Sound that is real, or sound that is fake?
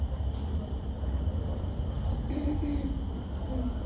real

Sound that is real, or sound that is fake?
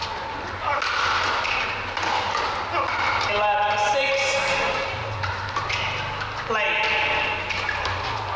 real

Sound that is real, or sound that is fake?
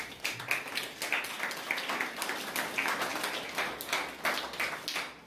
real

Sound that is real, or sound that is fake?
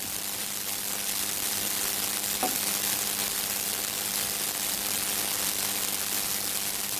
real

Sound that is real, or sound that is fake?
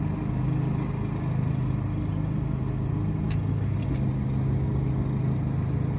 real